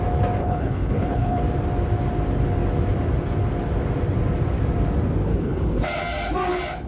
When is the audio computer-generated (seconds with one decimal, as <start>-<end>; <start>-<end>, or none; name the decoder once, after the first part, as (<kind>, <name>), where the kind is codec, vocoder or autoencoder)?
0.4-1.4 (codec, HILCodec); 5.3-5.8